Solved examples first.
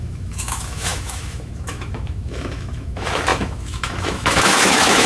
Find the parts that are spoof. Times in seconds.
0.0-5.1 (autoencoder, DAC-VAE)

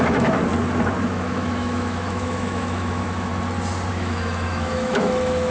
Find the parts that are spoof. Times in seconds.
0.0-0.4 (autoencoder, DAC-VAE); 1.0-3.3; 3.9-5.5

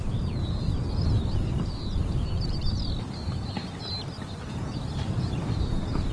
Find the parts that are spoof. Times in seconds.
none

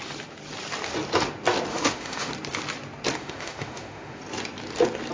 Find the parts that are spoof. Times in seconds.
1.7-2.3 (autoencoder, DAC-VAE); 3.2-4.2

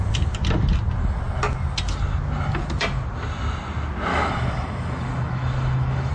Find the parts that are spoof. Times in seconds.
4.1-6.1 (autoencoder, DAC-VAE)

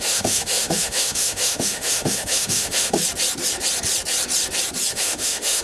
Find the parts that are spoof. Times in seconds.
0.0-3.0 (autoencoder, DAC-VAE); 4.9-5.6

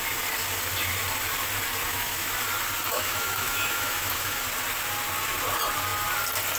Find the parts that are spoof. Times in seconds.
1.9-2.4 (autoencoder, DAC-VAE); 2.9-4.4

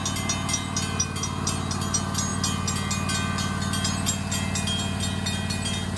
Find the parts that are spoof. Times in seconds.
none